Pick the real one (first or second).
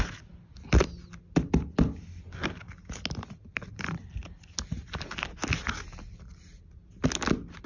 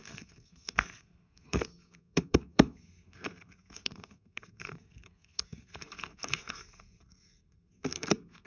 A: first